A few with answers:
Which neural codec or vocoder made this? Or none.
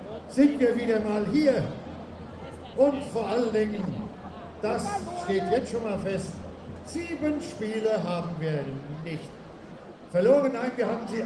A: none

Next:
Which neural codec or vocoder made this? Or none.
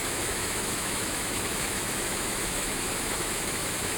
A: autoencoder, DAC-VAE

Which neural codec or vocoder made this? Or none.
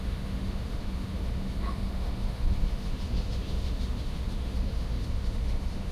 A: autoencoder, DAC-VAE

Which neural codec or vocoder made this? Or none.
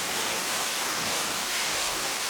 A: codec, DAC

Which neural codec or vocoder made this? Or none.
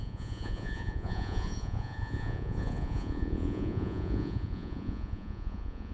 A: vocoder, Vocos